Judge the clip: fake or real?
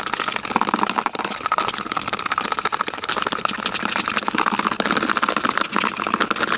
real